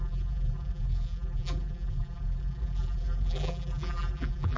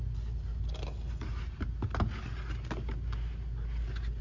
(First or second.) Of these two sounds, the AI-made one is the first